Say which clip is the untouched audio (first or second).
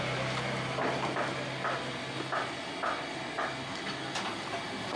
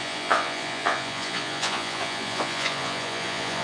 first